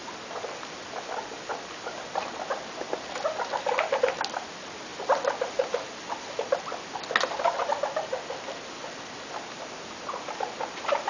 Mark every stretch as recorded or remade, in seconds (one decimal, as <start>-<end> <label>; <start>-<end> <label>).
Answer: 0.0-11.1 recorded